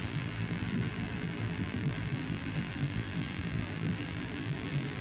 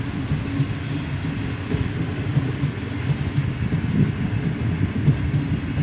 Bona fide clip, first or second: second